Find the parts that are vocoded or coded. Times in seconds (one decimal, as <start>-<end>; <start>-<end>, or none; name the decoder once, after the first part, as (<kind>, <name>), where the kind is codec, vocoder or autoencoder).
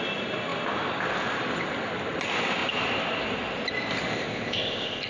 4.1-5.1 (codec, ZipCodec)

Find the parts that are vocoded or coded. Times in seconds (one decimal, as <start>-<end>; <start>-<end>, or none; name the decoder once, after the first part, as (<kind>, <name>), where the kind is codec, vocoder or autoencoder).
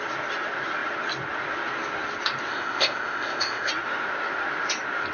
2.5-3.7 (codec, ZipCodec)